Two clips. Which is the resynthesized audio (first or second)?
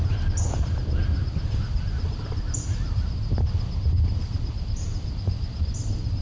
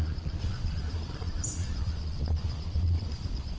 second